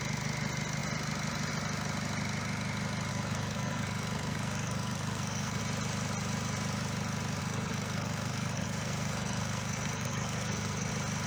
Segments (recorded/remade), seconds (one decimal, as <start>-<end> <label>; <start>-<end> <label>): 0.0-3.1 recorded; 3.1-5.6 remade; 5.6-7.4 recorded; 7.4-10.9 remade; 10.9-11.3 recorded